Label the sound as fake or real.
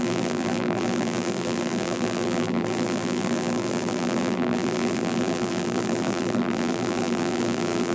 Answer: fake